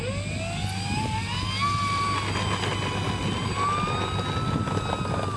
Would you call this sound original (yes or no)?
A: yes